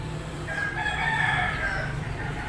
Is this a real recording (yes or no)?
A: no